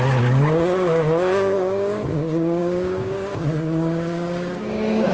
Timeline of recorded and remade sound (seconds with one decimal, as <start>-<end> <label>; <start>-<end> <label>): 0.0-5.1 remade